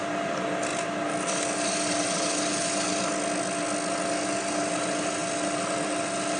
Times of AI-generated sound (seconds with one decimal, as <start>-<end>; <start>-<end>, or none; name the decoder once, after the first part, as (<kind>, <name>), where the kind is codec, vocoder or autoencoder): none